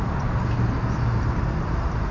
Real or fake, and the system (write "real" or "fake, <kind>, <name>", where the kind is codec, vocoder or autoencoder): real